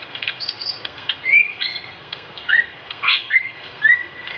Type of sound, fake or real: fake